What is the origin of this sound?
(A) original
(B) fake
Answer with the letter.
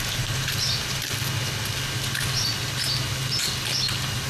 A